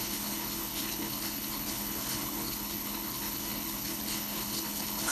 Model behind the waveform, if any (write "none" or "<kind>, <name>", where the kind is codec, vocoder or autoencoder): codec, HILCodec